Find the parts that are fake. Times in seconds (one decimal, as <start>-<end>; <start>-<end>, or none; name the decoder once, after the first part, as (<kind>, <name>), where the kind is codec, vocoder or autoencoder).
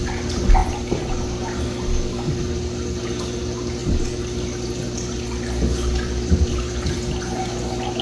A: 1.9-2.4 (codec, DAC)